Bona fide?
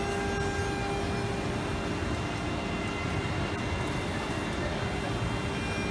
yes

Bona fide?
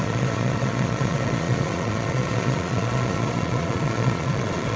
no